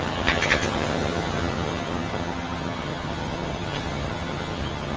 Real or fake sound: fake